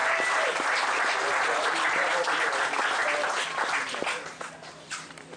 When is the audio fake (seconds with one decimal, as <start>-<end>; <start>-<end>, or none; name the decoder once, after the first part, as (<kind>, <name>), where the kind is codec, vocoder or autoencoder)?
2.1-3.0 (vocoder, BigVGAN v2); 4.6-5.4